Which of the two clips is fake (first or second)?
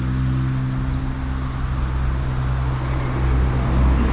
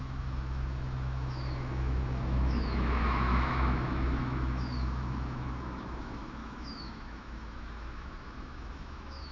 second